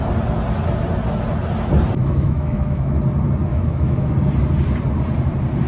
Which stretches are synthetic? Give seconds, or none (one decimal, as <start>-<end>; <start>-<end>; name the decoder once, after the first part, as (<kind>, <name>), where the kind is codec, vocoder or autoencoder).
2.0-3.0 (autoencoder, DAC-VAE); 3.5-4.1